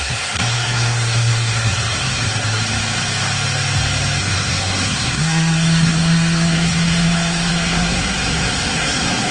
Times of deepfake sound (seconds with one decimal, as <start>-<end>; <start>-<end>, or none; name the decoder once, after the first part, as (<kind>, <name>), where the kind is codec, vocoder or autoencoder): 0.0-2.6 (codec, SNAC); 4.2-9.3